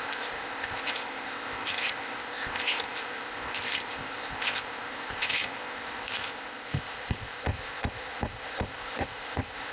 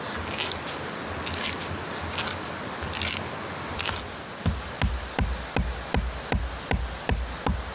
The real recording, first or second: second